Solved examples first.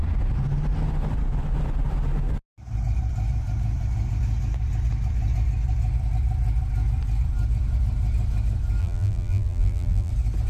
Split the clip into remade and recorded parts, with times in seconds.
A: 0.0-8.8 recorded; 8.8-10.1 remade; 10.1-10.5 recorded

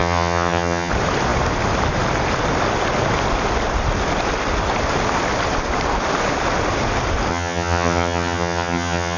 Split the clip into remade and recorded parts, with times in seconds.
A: 0.0-0.9 remade; 0.9-7.3 recorded; 7.3-9.2 remade

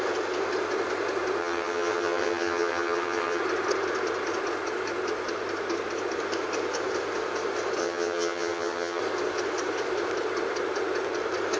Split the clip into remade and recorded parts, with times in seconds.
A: 0.0-1.4 recorded; 1.4-3.4 remade; 3.4-7.8 recorded; 7.8-9.0 remade; 9.0-11.6 recorded

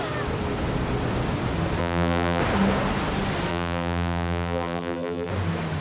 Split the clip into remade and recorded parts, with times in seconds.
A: 0.0-1.8 recorded; 1.8-2.4 remade; 2.4-3.5 recorded; 3.5-5.3 remade; 5.3-5.8 recorded

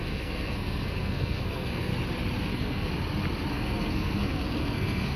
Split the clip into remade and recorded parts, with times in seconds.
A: 0.0-1.9 remade; 1.9-2.5 recorded; 2.5-2.9 remade; 2.9-3.5 recorded; 3.5-5.2 remade

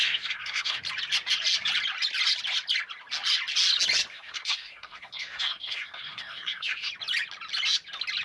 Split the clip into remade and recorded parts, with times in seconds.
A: 0.0-0.8 remade; 0.8-4.1 recorded; 4.1-6.9 remade; 6.9-8.2 recorded

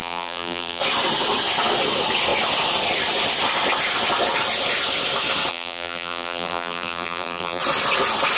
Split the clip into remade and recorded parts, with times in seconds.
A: 0.0-0.8 remade; 0.8-5.5 recorded; 5.5-7.6 remade; 7.6-8.4 recorded

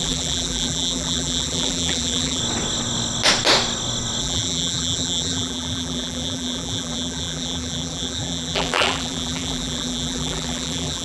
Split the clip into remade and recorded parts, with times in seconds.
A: 0.0-2.4 remade; 2.4-4.2 recorded; 4.2-11.0 remade